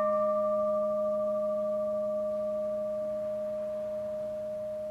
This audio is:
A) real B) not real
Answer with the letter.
A